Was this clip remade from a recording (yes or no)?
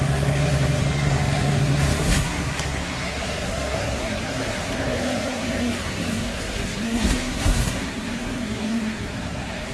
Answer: yes